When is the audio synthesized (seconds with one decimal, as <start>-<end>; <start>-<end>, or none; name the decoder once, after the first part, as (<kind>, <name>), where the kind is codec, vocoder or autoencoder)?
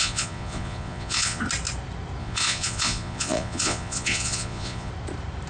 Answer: 0.0-1.4 (vocoder, Vocos); 2.2-4.9